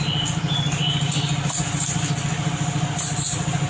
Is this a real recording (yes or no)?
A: yes